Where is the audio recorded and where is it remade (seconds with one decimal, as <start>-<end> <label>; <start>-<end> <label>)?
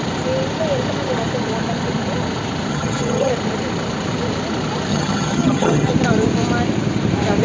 0.0-2.7 recorded; 2.7-3.3 remade; 3.3-4.9 recorded; 4.9-5.9 remade; 5.9-7.4 recorded